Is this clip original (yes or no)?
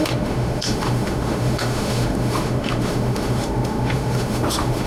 no